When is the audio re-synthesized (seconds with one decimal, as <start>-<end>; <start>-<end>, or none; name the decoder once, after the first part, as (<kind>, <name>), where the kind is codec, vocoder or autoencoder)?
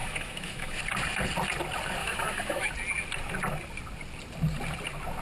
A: 0.0-0.8 (autoencoder, DAC-VAE); 2.0-2.7